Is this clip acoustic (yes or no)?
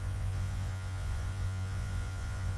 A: no